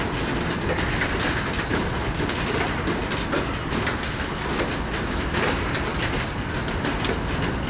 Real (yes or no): yes